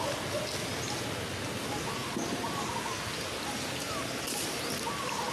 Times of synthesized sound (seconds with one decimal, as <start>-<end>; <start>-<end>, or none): none